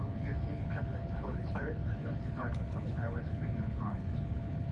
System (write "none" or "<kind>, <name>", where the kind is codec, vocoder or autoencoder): codec, HILCodec